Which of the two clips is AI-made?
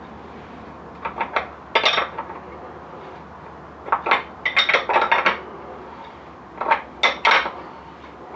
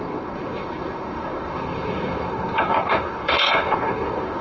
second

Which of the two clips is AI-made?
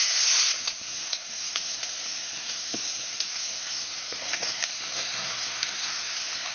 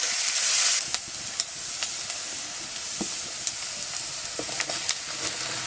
first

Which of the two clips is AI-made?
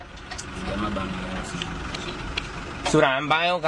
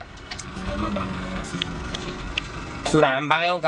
second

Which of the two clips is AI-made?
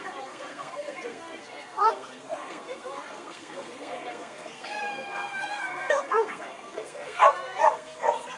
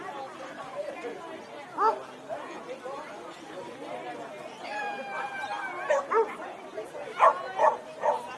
first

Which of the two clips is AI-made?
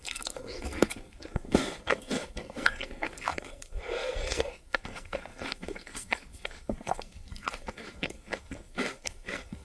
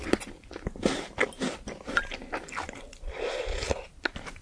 first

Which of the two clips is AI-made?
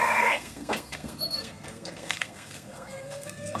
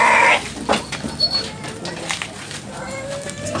first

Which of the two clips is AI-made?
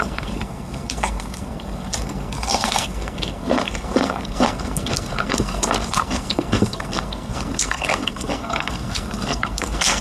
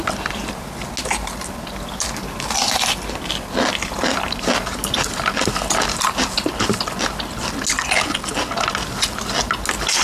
first